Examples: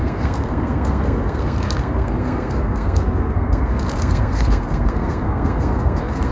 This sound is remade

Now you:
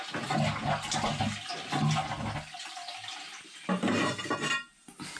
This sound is recorded